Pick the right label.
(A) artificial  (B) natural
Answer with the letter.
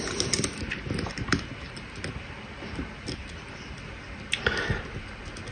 B